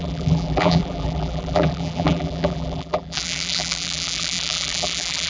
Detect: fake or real fake